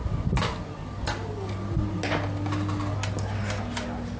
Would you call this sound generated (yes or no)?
no